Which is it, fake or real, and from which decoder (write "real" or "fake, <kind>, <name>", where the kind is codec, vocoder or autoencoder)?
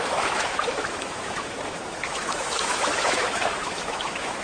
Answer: fake, autoencoder, DAC-VAE